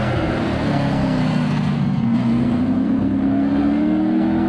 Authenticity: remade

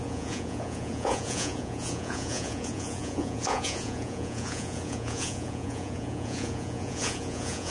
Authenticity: remade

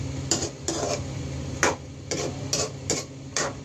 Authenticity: remade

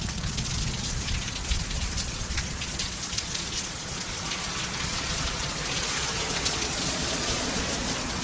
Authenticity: remade